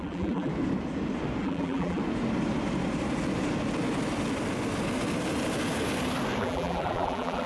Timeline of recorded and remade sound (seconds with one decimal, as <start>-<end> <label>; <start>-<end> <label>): 0.0-0.5 remade; 0.5-1.4 recorded; 1.4-2.0 remade; 2.0-6.4 recorded; 6.4-7.5 remade